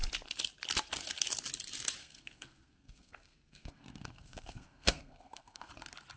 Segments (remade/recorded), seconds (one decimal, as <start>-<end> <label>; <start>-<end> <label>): 0.0-2.0 recorded; 2.0-5.7 remade; 5.7-6.2 recorded